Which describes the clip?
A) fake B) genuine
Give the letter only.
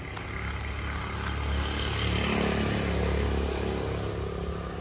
B